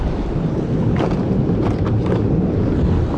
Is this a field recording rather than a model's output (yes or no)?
yes